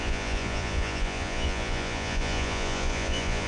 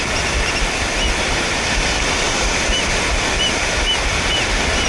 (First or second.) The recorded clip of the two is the second